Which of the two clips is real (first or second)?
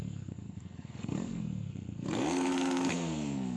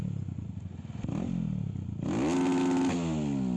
second